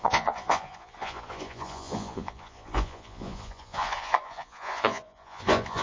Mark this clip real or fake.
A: fake